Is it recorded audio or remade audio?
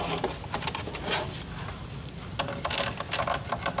recorded